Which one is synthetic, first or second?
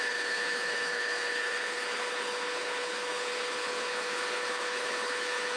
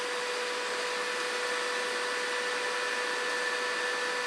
first